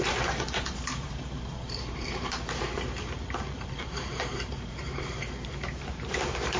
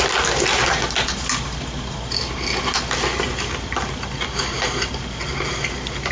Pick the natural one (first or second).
second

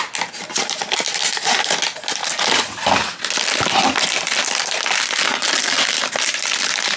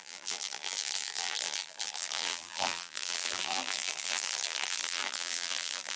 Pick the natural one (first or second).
first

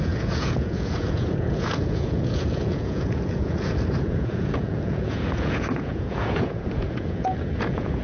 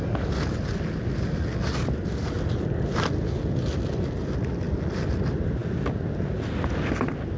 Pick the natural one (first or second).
second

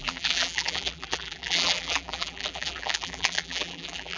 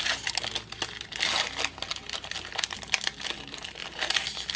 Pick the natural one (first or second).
second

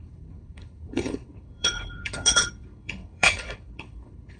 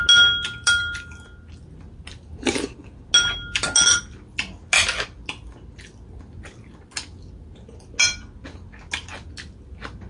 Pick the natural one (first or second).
second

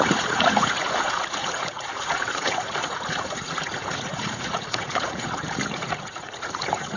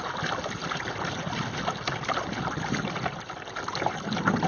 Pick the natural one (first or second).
second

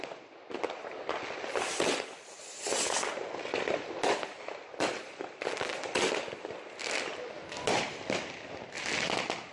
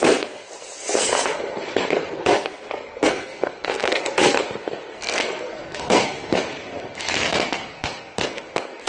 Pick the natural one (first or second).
first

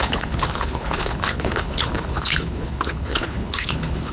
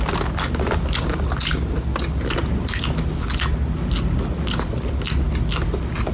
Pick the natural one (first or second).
second